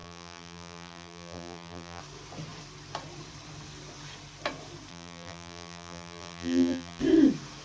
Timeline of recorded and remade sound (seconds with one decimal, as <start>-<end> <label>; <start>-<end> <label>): 0.0-2.0 remade; 2.0-4.9 recorded; 4.9-7.0 remade; 7.0-7.6 recorded